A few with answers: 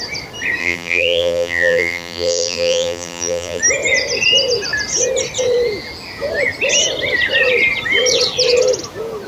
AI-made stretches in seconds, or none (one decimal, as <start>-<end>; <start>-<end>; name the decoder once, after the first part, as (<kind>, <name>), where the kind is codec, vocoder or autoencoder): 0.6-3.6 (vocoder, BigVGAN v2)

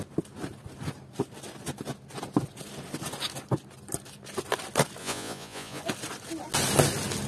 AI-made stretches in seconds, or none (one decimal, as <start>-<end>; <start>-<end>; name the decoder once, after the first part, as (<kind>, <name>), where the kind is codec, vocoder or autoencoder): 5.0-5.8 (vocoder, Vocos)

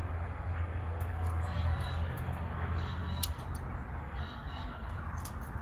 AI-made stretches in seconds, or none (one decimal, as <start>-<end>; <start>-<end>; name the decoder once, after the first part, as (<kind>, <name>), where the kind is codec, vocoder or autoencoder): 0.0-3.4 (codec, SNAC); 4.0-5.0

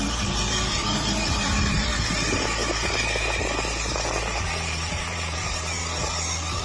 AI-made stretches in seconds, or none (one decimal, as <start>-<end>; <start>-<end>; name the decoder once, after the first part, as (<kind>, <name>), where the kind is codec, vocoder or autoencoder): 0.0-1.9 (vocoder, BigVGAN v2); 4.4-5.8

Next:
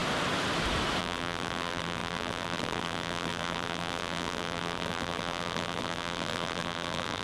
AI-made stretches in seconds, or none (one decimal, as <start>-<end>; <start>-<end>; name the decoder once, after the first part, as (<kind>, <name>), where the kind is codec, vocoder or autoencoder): 1.0-7.2 (vocoder, BigVGAN v2)

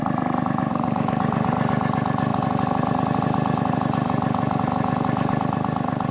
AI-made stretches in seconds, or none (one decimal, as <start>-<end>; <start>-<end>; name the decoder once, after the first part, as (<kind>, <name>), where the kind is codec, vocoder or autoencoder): 0.7-1.2 (codec, DAC)

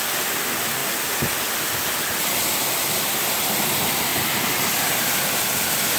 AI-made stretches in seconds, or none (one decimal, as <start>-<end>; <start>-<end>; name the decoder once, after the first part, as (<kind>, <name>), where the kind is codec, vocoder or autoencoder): none